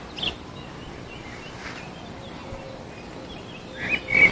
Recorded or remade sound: recorded